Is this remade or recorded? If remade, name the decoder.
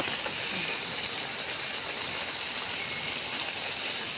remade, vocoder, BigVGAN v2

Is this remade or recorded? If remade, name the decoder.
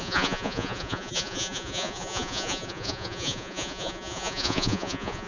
remade, vocoder, Vocos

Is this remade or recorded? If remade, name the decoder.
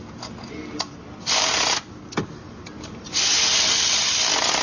recorded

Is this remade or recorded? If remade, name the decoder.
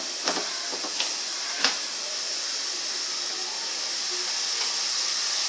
recorded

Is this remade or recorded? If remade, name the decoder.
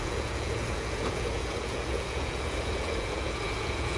remade, vocoder, Vocos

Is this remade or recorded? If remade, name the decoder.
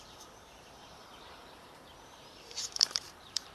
remade, vocoder, BigVGAN v2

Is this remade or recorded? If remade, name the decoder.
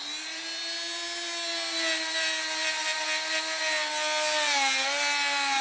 recorded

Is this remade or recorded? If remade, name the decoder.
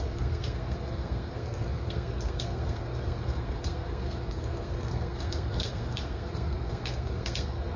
remade, codec, SNAC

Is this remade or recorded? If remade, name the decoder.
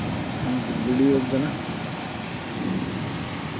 recorded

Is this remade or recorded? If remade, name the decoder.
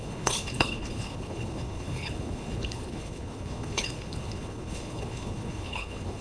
remade, codec, HILCodec